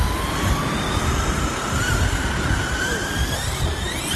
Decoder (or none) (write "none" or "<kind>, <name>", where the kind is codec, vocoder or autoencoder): none